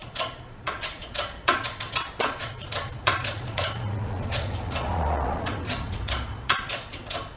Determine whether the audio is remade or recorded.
remade